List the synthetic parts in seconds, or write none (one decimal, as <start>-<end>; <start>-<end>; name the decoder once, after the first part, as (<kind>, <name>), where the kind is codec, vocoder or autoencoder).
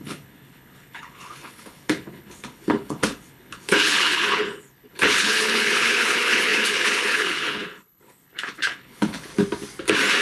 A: 0.0-9.3 (codec, HILCodec)